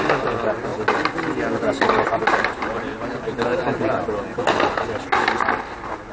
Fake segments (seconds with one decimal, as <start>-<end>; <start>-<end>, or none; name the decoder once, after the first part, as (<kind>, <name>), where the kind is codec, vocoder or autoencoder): none